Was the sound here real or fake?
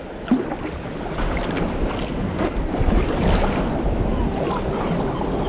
real